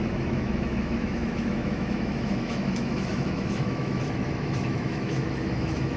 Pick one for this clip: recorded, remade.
remade